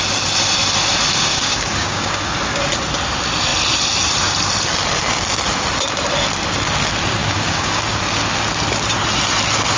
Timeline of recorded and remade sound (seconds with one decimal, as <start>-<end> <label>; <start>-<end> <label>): 0.0-1.3 recorded; 1.3-2.3 remade; 2.3-7.2 recorded; 7.2-8.0 remade; 8.0-9.8 recorded